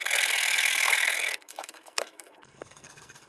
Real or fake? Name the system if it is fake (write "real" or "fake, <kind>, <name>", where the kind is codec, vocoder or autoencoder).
fake, codec, SNAC